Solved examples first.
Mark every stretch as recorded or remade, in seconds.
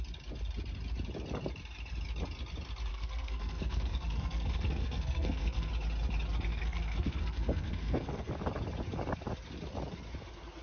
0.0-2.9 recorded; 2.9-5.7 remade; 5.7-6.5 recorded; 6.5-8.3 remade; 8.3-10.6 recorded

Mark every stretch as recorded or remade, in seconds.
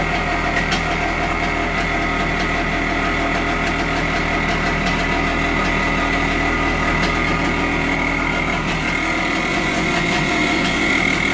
0.0-9.5 recorded; 9.5-10.9 remade; 10.9-11.3 recorded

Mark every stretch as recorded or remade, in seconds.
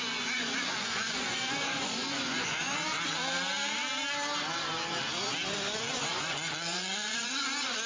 0.0-2.8 remade; 2.8-5.9 recorded; 5.9-7.9 remade